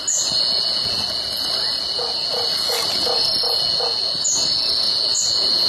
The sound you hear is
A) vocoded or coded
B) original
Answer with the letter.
B